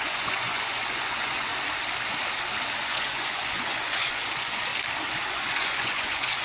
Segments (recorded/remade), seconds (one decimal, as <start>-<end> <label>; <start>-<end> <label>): 0.0-1.5 remade; 1.5-2.8 recorded; 2.8-4.7 remade; 4.7-5.3 recorded; 5.3-6.4 remade